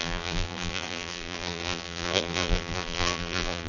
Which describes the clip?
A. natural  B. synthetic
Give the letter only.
B